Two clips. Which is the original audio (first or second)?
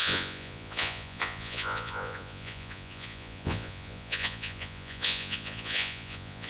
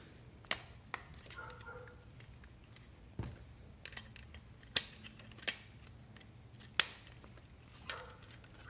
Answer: second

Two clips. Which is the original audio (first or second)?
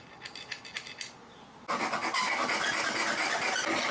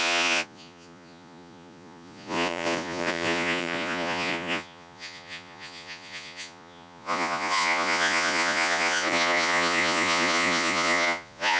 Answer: first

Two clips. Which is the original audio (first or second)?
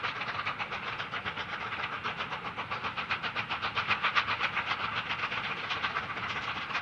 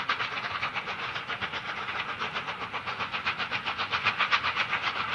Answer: first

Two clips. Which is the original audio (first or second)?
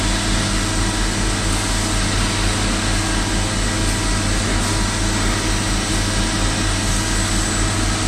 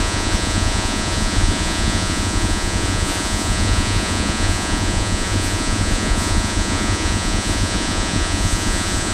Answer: first